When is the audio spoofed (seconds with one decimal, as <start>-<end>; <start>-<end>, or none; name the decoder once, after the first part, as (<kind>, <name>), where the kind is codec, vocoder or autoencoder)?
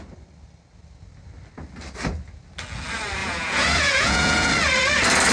3.2-4.5 (vocoder, Vocos)